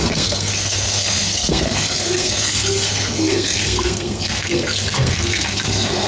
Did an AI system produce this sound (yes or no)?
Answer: yes